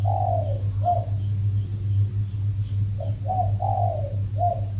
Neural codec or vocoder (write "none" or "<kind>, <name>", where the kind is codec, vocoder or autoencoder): none